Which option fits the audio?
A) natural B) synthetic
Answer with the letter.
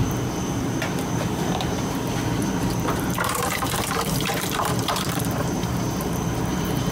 B